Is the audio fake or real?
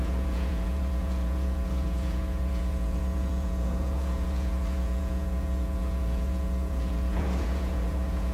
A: fake